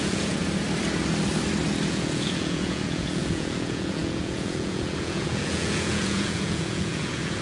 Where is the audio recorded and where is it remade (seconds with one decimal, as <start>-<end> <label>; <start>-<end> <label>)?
0.0-0.4 remade; 0.4-1.9 recorded; 1.9-7.4 remade